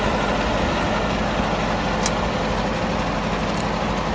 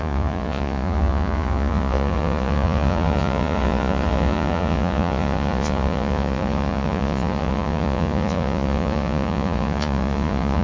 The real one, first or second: first